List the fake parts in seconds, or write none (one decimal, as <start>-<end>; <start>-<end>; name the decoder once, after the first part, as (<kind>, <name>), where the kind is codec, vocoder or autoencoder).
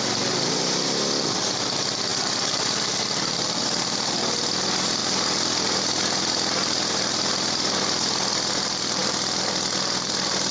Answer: 0.0-5.0 (vocoder, BigVGAN v2); 8.5-10.5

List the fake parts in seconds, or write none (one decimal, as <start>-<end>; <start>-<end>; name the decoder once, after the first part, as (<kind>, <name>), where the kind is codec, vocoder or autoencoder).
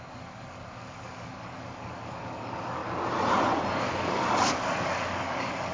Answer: 0.0-2.8 (codec, DAC); 3.8-5.7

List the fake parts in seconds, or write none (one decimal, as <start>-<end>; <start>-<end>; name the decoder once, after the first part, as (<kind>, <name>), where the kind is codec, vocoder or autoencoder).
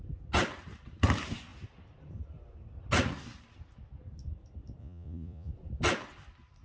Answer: 4.8-5.5 (vocoder, Vocos)